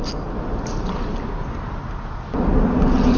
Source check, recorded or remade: recorded